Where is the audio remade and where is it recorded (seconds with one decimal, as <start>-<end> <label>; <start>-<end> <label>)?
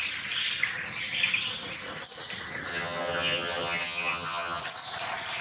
0.0-2.7 recorded; 2.7-4.6 remade; 4.6-5.4 recorded